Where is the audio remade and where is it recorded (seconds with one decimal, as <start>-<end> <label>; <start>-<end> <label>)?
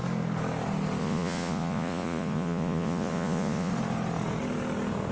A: 0.0-1.0 recorded; 1.0-3.7 remade; 3.7-5.1 recorded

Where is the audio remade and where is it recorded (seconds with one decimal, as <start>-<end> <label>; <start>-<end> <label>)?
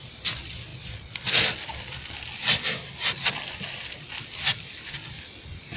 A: 0.0-5.8 recorded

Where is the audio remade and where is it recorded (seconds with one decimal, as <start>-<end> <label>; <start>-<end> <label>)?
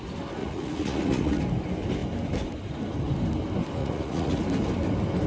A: 0.0-0.4 recorded; 0.4-1.4 remade; 1.4-3.8 recorded; 3.8-4.4 remade; 4.4-5.3 recorded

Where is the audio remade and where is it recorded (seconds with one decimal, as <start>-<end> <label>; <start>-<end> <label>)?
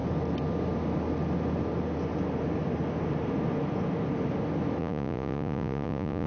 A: 0.0-4.8 recorded; 4.8-6.3 remade